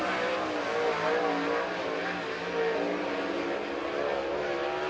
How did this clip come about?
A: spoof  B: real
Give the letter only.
B